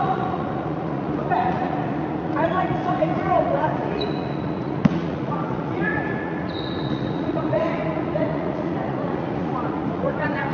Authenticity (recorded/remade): remade